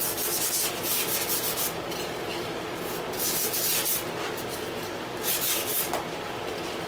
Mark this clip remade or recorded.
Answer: recorded